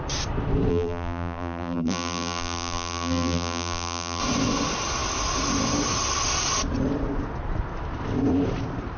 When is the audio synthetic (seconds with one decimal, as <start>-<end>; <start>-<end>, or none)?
0.7-4.2